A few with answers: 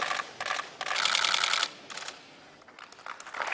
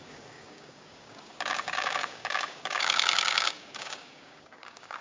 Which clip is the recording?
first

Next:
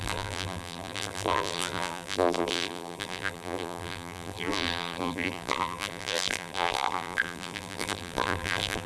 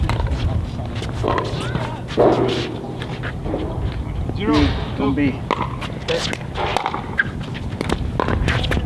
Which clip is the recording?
second